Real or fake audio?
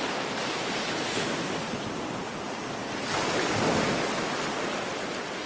real